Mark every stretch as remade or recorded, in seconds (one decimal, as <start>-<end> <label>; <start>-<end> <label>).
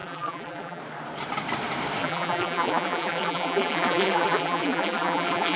0.0-0.8 remade; 0.8-2.0 recorded; 2.0-5.6 remade